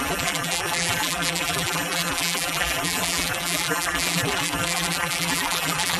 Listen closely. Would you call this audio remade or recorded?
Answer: remade